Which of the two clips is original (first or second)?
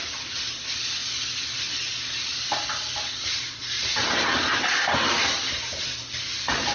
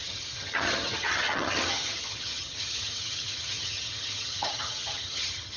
first